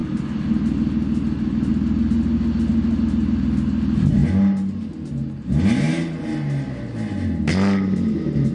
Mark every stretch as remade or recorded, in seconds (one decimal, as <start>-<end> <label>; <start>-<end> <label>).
0.0-8.5 recorded